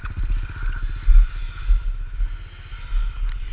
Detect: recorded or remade recorded